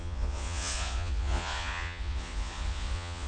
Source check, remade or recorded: remade